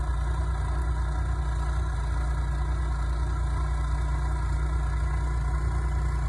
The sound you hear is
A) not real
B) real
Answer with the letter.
B